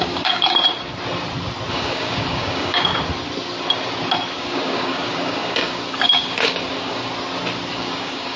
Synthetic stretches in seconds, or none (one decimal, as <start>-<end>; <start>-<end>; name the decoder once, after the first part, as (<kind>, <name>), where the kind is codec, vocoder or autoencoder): 0.0-0.6 (codec, DAC); 1.7-2.9; 4.4-7.1; 7.7-8.4